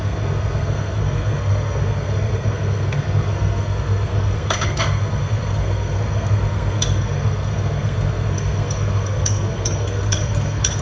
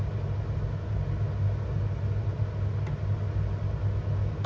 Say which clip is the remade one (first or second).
first